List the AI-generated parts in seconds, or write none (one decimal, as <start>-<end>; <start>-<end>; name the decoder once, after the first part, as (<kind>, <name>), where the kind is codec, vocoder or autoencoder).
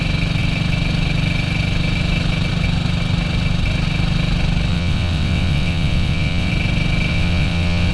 4.7-6.5 (vocoder, WaveNeXt); 7.1-7.9